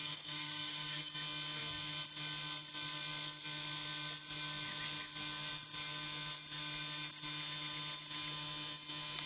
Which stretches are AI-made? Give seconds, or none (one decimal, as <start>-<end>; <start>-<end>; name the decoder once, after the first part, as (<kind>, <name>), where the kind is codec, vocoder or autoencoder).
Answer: 0.0-1.0 (codec, DAC)